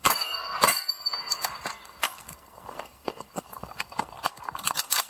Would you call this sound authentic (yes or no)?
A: no